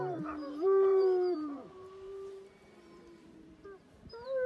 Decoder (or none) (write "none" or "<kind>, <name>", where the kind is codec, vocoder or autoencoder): vocoder, BigVGAN v2